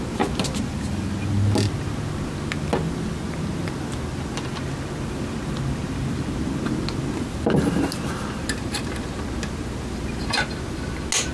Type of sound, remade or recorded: recorded